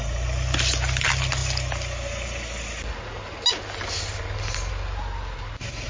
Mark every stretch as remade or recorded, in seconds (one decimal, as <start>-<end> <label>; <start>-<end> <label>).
0.0-4.7 recorded; 4.7-5.4 remade; 5.4-5.9 recorded